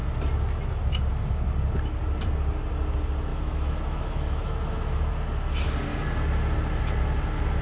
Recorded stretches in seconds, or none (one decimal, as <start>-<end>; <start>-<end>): 0.0-3.3; 5.1-7.6